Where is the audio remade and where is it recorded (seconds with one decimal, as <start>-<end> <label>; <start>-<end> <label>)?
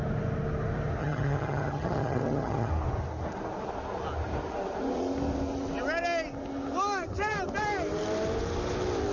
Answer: 0.0-1.0 recorded; 1.0-2.7 remade; 2.7-9.1 recorded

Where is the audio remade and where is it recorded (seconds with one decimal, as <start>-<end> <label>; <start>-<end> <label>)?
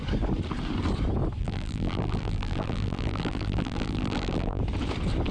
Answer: 0.0-1.4 recorded; 1.4-4.6 remade; 4.6-5.3 recorded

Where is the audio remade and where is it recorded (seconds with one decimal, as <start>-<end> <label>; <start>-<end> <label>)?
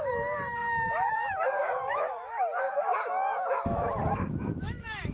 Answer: 0.0-5.1 remade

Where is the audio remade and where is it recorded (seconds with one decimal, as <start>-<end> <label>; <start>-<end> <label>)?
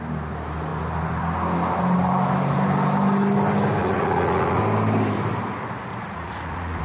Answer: 0.0-3.8 recorded; 3.8-4.6 remade; 4.6-5.9 recorded; 5.9-6.8 remade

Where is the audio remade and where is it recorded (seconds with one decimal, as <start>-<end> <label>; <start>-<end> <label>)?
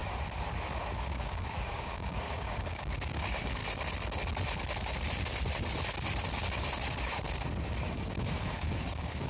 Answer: 0.0-0.8 recorded; 0.8-3.6 remade; 3.6-7.9 recorded; 7.9-9.3 remade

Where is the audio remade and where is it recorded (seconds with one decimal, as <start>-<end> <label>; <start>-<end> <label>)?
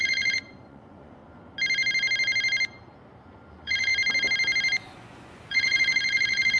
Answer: 0.0-1.2 remade; 1.2-3.5 recorded; 3.5-3.9 remade; 3.9-4.8 recorded; 4.8-6.6 remade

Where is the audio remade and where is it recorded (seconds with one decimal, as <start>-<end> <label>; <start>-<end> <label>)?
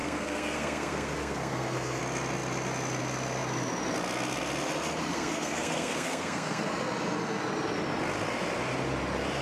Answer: 0.0-2.0 remade; 2.0-5.1 recorded; 5.1-6.7 remade; 6.7-9.4 recorded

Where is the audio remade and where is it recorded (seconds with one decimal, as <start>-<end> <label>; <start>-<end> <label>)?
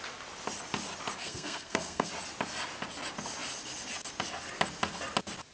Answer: 0.0-1.2 recorded; 1.2-2.1 remade; 2.1-5.5 recorded